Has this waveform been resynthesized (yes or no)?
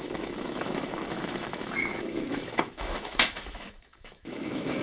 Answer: yes